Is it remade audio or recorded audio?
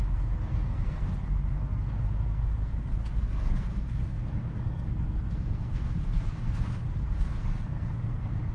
remade